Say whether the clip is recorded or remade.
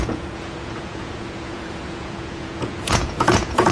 remade